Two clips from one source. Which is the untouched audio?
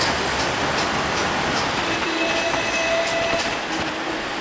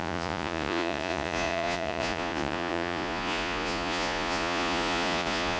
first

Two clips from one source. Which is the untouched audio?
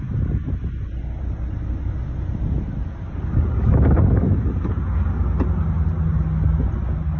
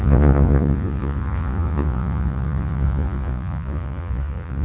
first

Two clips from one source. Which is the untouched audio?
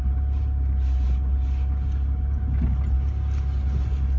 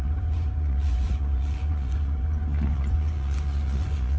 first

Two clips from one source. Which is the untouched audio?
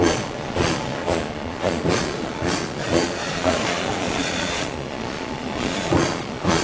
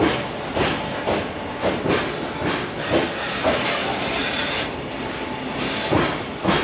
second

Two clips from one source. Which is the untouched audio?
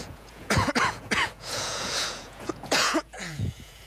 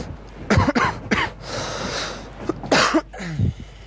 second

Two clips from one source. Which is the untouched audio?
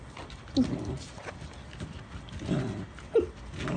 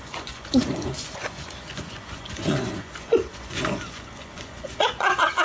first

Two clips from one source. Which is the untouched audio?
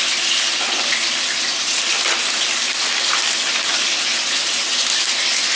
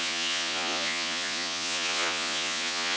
first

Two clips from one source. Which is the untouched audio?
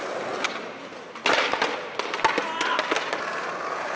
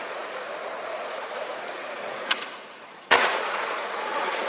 first